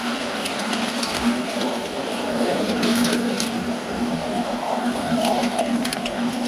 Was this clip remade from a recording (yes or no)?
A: yes